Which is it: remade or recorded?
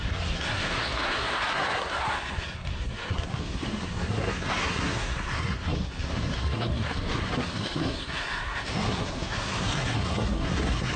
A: remade